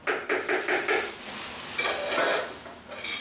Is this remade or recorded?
recorded